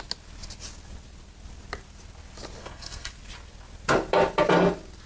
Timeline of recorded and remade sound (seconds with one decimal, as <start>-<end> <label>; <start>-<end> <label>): 0.0-2.6 recorded; 2.6-3.1 remade; 3.1-5.1 recorded